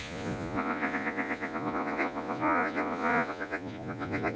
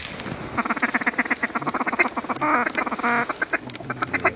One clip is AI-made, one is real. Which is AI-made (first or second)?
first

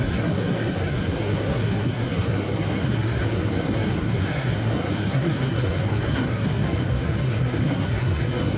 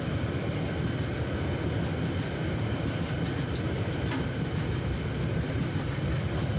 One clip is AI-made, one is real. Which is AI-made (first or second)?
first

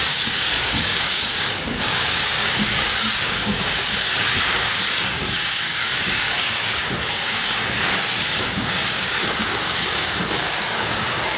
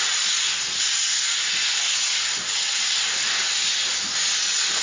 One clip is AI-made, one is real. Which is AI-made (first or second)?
first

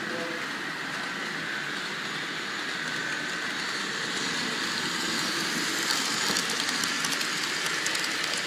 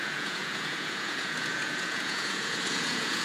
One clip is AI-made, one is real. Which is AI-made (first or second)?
second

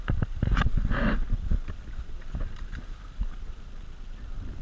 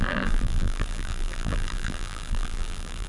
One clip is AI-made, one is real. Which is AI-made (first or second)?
second